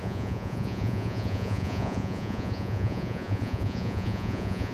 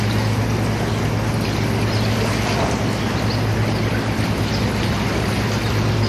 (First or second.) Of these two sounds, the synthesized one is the first